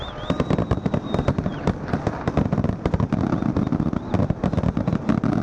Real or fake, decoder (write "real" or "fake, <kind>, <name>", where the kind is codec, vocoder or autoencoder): real